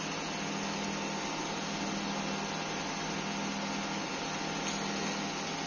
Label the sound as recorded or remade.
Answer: recorded